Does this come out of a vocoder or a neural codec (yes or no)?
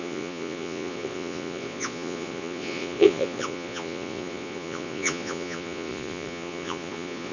yes